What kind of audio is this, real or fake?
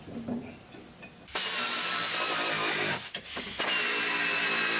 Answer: real